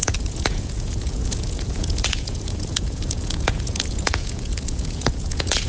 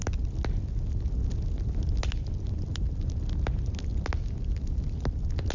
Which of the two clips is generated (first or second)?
first